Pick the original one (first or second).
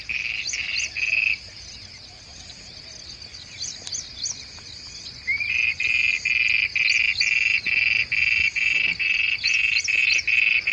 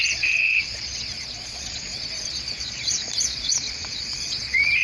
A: first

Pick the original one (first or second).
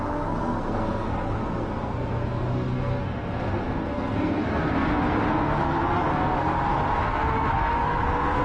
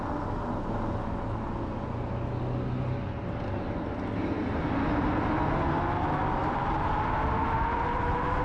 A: second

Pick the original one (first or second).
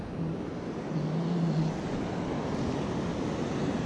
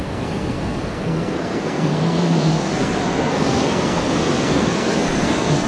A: first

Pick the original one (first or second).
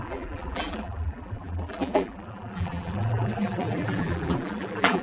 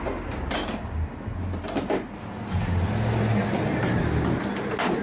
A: second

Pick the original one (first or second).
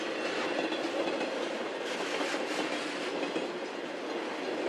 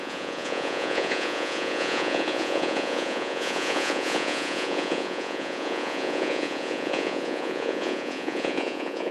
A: first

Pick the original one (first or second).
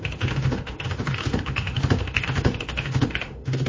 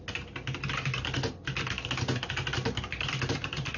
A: second